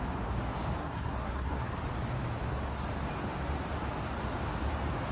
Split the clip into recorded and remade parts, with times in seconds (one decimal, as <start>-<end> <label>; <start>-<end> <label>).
0.0-0.8 recorded; 0.8-1.7 remade; 1.7-5.1 recorded